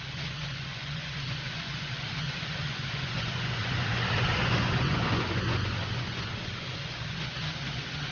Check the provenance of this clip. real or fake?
fake